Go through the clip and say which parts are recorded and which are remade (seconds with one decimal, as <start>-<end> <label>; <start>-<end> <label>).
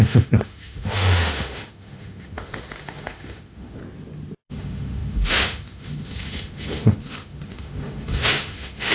0.0-3.8 remade; 3.8-4.4 recorded; 4.4-8.9 remade